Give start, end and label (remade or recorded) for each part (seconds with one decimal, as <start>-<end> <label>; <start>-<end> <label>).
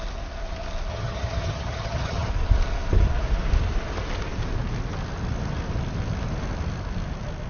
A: 0.0-0.9 recorded; 0.9-2.3 remade; 2.3-7.5 recorded